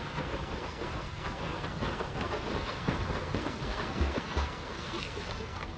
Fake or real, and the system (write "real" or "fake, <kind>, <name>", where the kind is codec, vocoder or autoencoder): fake, codec, SNAC